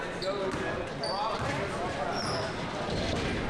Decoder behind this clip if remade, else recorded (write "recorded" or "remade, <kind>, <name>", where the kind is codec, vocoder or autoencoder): recorded